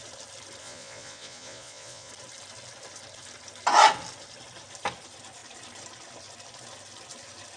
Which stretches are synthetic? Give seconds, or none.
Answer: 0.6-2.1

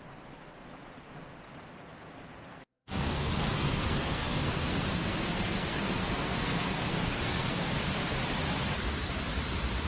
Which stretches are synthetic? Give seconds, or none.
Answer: 2.5-7.8

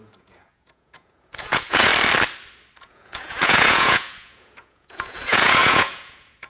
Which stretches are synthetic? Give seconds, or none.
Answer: 0.0-1.9; 2.8-6.5

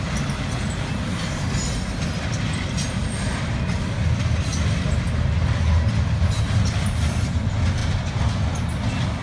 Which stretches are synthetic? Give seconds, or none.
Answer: none

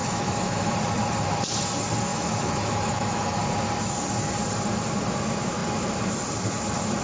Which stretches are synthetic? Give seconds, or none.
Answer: 0.0-0.7; 2.1-3.4

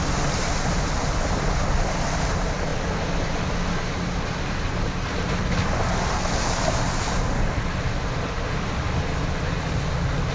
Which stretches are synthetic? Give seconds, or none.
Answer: none

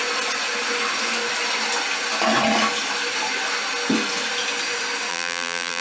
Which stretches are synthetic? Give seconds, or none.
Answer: 5.1-5.8